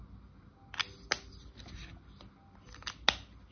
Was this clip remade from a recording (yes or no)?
no